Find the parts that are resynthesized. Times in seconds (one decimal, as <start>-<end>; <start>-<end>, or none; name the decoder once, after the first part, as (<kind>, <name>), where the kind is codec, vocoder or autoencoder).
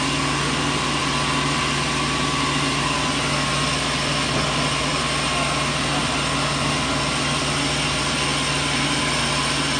none